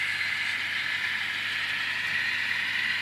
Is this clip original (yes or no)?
yes